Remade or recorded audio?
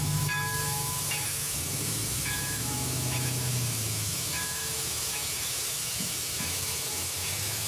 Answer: remade